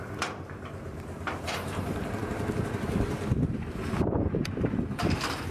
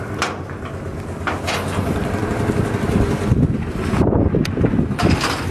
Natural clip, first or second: second